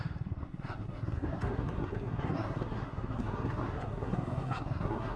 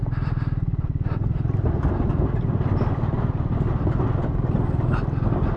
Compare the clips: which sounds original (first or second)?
second